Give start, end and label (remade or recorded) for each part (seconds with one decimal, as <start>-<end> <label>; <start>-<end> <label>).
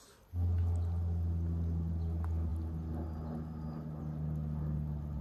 0.0-5.2 recorded